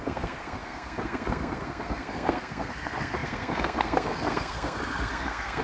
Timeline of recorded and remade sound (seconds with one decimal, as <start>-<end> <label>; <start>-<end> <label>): 0.0-5.6 remade